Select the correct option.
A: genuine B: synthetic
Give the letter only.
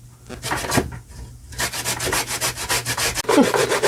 A